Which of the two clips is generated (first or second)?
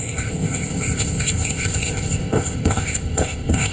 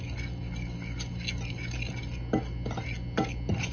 first